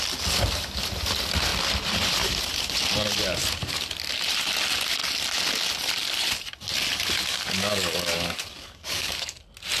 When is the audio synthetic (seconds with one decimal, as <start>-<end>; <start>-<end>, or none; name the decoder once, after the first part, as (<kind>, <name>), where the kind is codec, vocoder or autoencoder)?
7.2-9.4 (codec, DAC)